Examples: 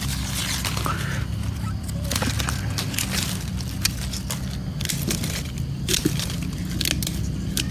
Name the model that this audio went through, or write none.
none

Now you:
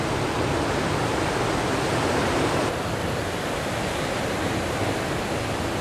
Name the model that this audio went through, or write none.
none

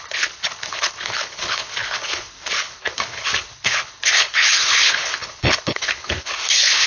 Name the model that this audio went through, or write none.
codec, HILCodec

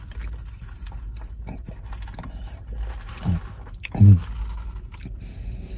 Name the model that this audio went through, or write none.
none